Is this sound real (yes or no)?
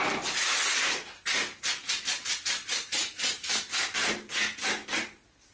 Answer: yes